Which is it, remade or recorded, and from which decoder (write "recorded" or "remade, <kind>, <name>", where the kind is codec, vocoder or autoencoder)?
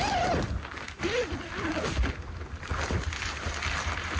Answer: recorded